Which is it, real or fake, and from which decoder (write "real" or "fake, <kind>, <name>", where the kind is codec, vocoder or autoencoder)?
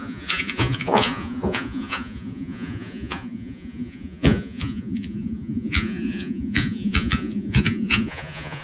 fake, vocoder, Vocos